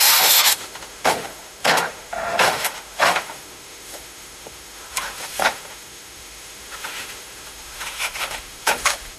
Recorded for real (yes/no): no